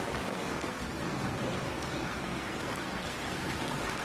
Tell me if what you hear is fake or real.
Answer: fake